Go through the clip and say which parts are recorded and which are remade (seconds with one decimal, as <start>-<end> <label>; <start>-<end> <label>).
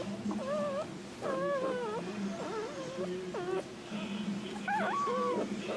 0.0-5.8 recorded